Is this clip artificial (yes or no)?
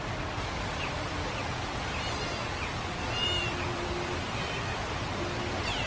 no